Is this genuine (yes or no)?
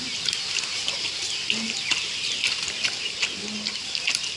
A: yes